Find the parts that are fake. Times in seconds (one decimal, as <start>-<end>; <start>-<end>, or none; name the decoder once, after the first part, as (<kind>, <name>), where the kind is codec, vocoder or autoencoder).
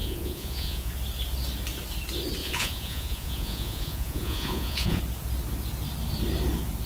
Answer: 0.0-0.9 (vocoder, Vocos); 2.4-5.0